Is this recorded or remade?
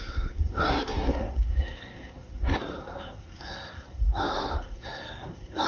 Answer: remade